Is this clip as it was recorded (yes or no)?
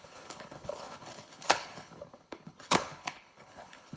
no